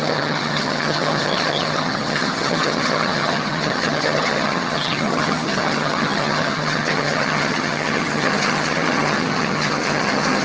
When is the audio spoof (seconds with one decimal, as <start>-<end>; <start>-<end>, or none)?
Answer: 0.0-10.4